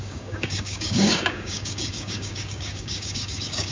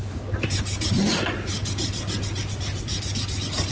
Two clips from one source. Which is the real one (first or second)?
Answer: second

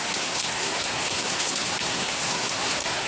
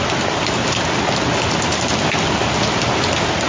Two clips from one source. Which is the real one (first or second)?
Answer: second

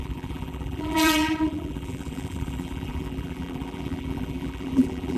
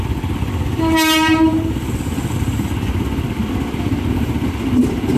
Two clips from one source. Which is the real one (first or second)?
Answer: second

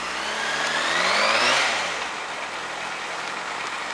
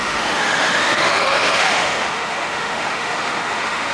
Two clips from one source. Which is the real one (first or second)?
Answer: first